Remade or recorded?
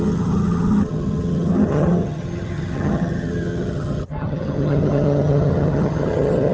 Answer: remade